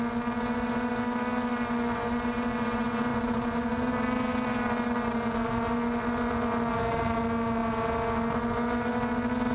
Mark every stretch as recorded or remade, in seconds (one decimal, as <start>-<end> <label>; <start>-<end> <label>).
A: 0.0-9.5 recorded